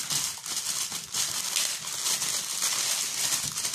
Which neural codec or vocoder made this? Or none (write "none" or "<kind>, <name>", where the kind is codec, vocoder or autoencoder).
none